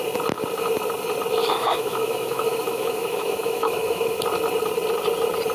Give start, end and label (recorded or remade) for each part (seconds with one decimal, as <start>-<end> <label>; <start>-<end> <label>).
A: 0.0-1.4 recorded; 1.4-4.2 remade; 4.2-5.5 recorded